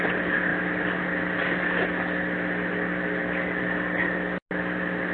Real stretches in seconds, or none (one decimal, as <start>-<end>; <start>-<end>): 0.0-5.1